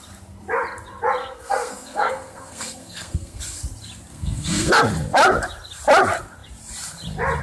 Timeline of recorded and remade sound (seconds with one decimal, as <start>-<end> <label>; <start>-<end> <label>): 0.0-1.2 recorded; 1.2-3.4 remade; 3.4-4.1 recorded; 4.1-4.7 remade; 4.7-7.4 recorded